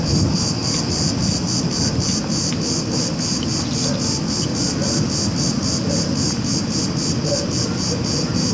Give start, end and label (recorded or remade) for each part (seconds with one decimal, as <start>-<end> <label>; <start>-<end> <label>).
0.0-8.5 recorded